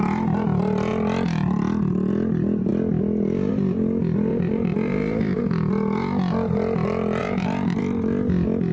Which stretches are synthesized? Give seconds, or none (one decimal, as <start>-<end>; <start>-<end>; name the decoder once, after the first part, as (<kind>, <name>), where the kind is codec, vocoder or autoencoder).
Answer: 4.3-5.4 (vocoder, BigVGAN v2); 7.2-7.8